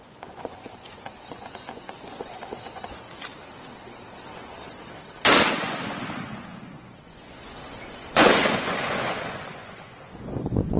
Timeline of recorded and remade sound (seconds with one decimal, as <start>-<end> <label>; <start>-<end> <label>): 0.0-3.3 remade; 3.3-4.1 recorded; 4.1-5.0 remade; 5.0-5.5 recorded; 5.5-10.8 remade